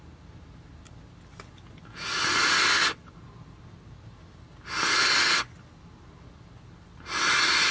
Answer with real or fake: real